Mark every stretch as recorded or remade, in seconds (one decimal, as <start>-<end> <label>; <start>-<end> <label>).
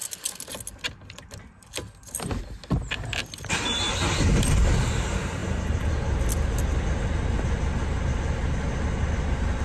0.0-9.6 recorded